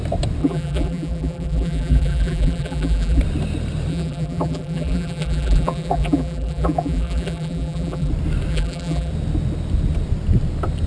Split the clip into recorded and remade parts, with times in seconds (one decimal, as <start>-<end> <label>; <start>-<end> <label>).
0.0-0.4 recorded; 0.4-3.2 remade; 3.2-3.9 recorded; 3.9-8.1 remade; 8.1-8.5 recorded; 8.5-9.1 remade; 9.1-10.9 recorded